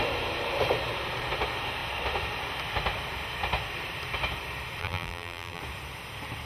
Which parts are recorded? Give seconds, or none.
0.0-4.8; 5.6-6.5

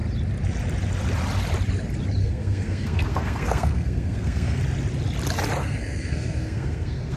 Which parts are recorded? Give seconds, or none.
0.0-2.2; 4.6-5.6

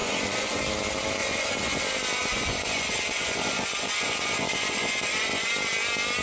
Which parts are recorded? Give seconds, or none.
0.6-1.2; 1.8-2.2; 5.5-6.2

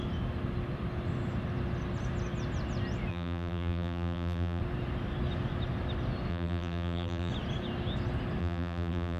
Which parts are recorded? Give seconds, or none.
0.0-3.1; 4.6-6.3; 7.3-8.4

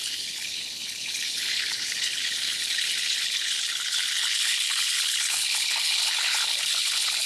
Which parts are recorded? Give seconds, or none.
none

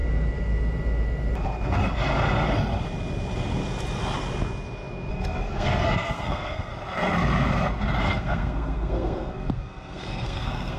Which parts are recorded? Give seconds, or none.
0.0-5.1; 6.7-8.0

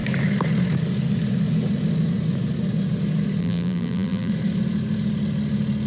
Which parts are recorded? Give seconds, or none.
0.0-3.4; 4.3-5.9